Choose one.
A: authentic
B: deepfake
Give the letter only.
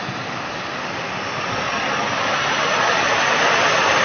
A